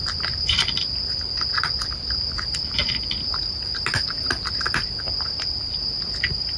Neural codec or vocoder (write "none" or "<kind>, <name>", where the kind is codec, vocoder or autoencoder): none